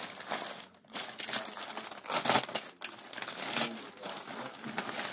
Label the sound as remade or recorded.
recorded